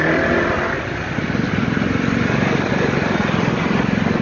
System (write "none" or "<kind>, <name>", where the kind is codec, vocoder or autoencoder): none